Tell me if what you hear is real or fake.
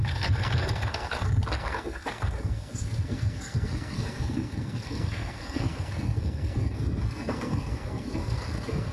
fake